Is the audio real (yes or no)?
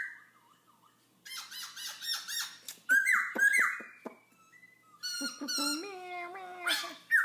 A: yes